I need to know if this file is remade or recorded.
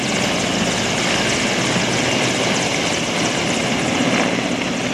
recorded